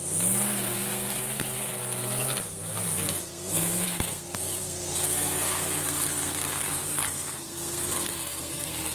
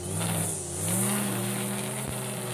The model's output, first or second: first